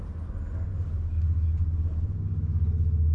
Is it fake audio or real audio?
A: real